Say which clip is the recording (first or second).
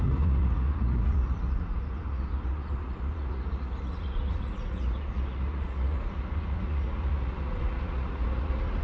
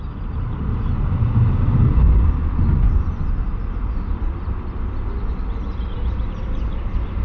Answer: second